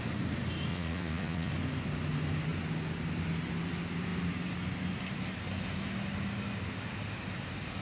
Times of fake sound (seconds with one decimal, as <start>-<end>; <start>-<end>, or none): 0.7-1.5